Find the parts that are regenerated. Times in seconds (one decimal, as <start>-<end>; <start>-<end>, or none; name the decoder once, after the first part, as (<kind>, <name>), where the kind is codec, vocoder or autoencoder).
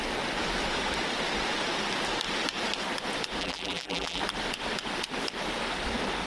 3.4-4.2 (vocoder, BigVGAN v2)